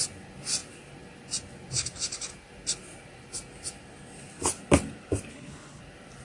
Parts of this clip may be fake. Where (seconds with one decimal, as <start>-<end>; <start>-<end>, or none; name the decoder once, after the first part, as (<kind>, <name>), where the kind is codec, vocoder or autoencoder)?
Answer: 5.3-5.8 (codec, HILCodec)